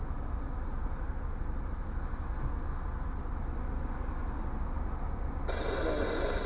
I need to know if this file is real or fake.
real